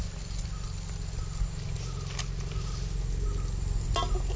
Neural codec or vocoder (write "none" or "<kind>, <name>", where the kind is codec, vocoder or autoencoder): none